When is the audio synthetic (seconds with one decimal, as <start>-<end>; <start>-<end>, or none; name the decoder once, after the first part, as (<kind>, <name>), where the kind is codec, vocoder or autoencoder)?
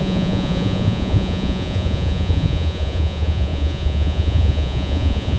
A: 0.0-5.4 (vocoder, Vocos)